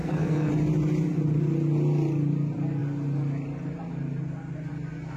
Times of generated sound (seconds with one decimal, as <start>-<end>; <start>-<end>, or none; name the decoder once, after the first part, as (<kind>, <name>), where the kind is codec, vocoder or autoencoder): 0.0-0.5 (codec, SNAC)